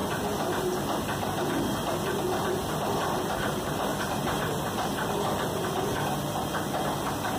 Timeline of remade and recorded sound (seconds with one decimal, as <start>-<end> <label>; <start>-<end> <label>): 0.0-2.2 recorded; 2.2-3.9 remade; 3.9-7.4 recorded